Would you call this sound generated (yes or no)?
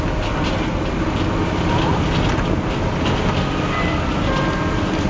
no